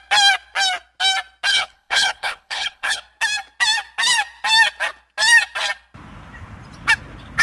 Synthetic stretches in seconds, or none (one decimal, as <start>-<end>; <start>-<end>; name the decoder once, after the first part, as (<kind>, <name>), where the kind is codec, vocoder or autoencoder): 1.5-3.0 (codec, HILCodec)